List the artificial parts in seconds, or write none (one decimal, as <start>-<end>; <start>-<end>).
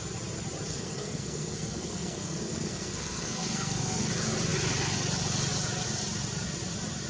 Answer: 0.7-4.1